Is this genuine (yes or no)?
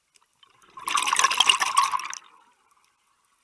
yes